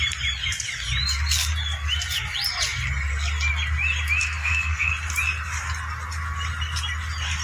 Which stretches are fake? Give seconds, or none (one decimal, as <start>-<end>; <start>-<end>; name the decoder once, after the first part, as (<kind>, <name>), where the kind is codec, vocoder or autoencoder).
4.4-4.9 (codec, SNAC)